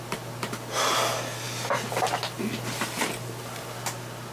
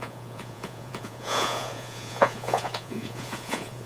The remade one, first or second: second